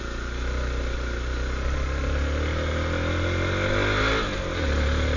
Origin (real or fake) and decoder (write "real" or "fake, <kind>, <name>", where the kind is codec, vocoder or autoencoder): real